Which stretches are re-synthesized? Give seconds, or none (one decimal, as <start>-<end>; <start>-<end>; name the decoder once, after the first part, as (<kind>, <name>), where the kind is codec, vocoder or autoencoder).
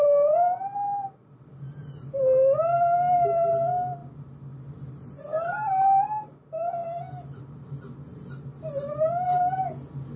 4.0-5.7 (vocoder, BigVGAN v2); 6.8-7.4; 8.5-9.1